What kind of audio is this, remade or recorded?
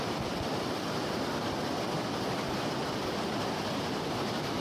remade